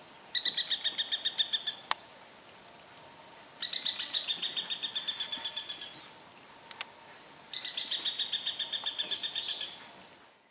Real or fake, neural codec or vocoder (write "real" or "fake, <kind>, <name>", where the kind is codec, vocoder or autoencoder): real